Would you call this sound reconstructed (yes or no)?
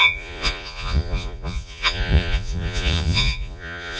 yes